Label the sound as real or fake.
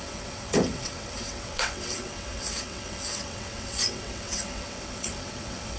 fake